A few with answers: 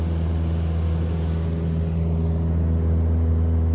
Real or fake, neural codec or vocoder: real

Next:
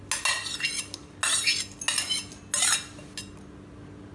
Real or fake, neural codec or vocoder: real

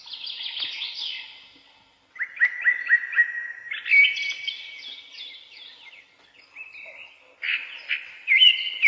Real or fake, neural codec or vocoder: real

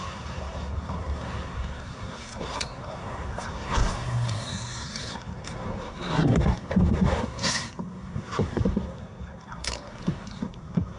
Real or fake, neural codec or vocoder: fake, codec, SNAC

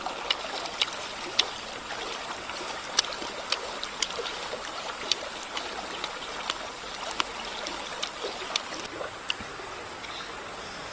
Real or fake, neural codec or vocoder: real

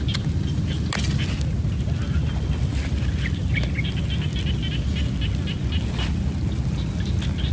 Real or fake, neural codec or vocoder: real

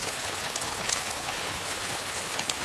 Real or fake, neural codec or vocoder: fake, codec, HILCodec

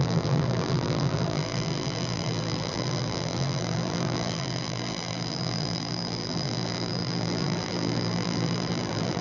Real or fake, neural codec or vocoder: fake, vocoder, BigVGAN v2